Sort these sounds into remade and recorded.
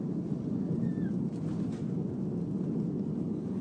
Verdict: recorded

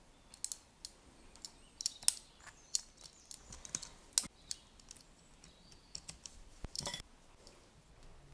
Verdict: recorded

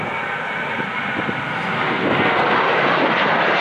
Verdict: recorded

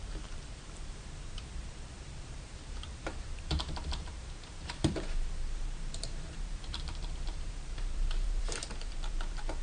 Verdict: remade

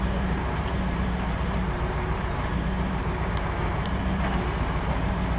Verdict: remade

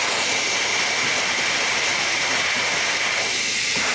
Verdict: recorded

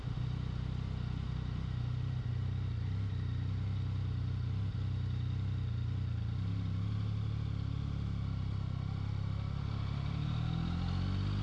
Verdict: recorded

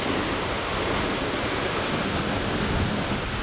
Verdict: recorded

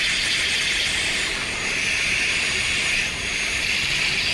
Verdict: remade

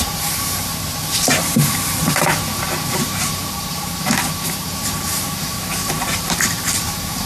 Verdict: remade